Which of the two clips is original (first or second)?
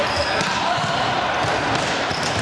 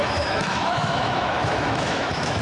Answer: first